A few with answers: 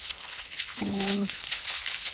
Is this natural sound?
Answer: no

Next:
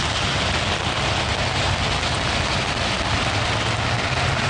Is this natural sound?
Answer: yes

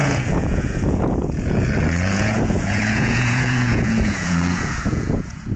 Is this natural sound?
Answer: no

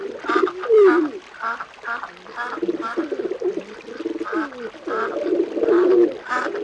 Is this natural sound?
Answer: yes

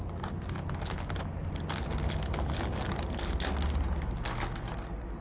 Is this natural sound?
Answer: yes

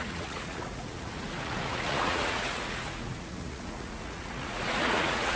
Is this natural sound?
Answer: no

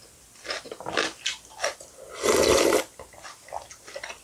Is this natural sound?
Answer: yes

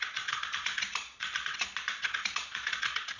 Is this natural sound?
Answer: no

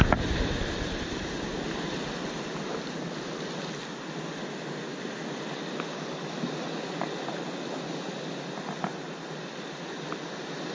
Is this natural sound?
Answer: yes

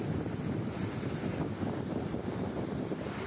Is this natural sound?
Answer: yes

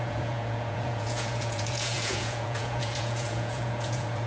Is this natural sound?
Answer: no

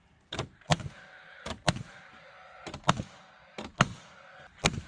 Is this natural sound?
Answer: yes